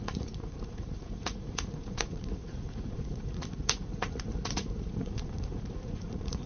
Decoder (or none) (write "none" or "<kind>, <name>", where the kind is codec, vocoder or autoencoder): vocoder, Vocos